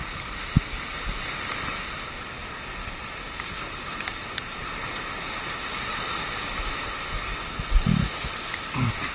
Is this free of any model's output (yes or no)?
yes